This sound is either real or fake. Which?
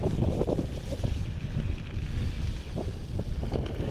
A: real